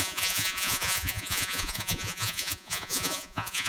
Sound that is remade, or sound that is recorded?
remade